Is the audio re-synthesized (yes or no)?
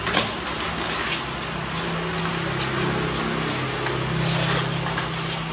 no